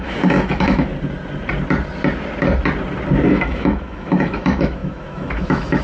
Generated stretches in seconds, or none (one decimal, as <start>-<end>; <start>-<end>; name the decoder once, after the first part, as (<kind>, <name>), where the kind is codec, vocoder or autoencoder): 0.0-0.9 (autoencoder, DAC-VAE); 3.3-5.8

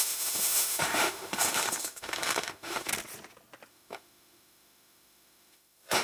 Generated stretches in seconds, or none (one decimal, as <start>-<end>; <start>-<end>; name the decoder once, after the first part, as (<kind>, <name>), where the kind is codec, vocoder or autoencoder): 0.0-2.9 (autoencoder, DAC-VAE); 3.7-6.0